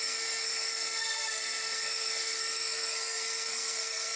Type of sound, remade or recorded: remade